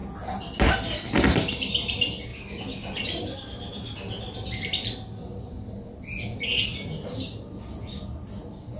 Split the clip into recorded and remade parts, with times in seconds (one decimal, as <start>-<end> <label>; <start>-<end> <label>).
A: 0.0-8.8 recorded